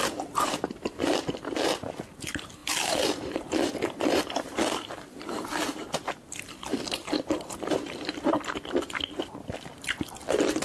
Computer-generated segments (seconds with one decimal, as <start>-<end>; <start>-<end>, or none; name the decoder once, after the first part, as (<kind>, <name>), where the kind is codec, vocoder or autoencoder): 0.0-10.6 (vocoder, BigVGAN v2)